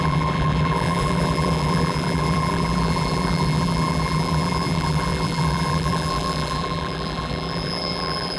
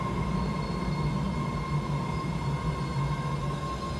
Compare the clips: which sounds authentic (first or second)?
second